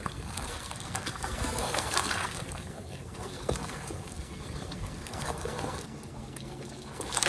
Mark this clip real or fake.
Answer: fake